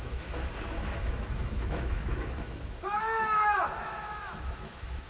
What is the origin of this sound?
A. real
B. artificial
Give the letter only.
B